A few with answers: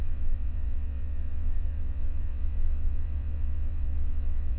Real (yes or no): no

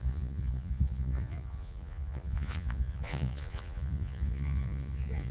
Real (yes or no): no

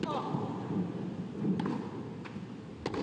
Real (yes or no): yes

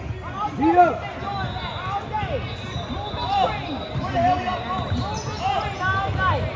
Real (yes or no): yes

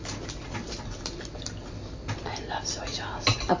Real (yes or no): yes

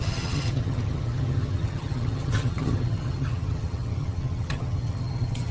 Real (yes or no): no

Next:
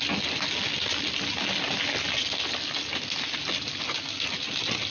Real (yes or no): yes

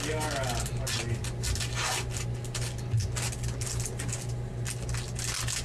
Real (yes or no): yes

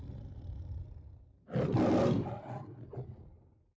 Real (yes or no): yes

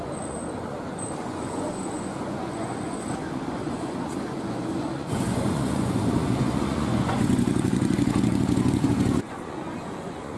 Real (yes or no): no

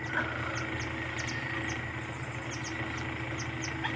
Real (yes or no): yes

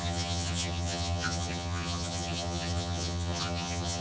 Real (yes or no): no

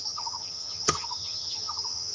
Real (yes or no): no